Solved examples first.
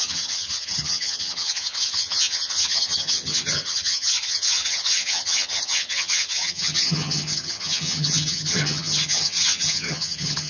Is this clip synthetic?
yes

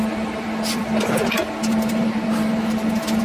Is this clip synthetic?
no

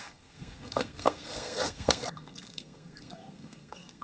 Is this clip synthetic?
yes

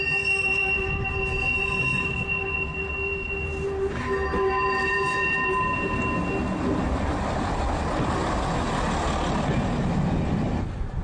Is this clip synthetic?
no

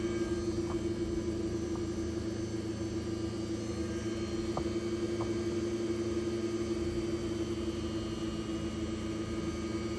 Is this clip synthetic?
no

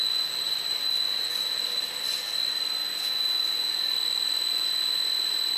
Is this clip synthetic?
no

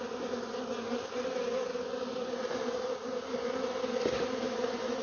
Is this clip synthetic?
no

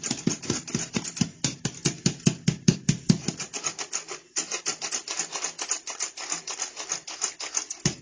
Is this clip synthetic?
no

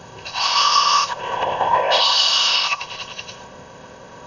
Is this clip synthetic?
yes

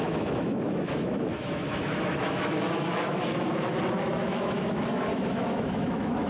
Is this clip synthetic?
yes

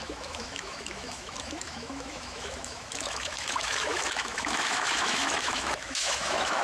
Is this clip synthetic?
yes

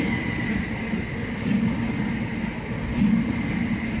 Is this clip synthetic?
no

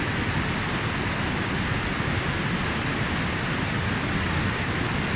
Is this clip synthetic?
no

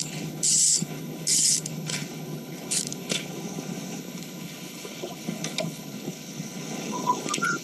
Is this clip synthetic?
yes